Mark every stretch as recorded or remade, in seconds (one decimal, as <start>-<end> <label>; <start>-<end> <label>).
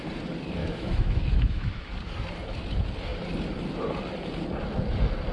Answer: 0.0-0.6 recorded; 0.6-1.9 remade; 1.9-5.3 recorded